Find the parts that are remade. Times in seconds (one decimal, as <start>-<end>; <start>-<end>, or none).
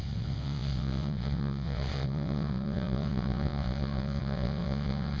0.0-5.2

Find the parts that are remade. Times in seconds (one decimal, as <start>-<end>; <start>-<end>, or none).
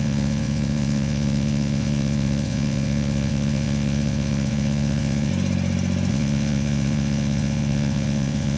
0.0-5.3; 6.1-8.6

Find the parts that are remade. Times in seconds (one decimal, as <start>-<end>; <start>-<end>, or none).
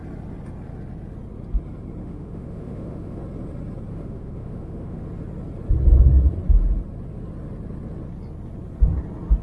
2.0-3.2; 3.9-5.0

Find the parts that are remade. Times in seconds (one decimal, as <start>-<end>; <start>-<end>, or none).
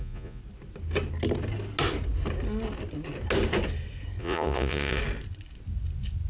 0.0-0.4; 4.2-5.0